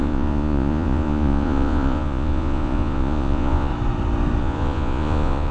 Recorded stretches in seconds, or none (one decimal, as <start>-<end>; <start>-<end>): 3.7-4.4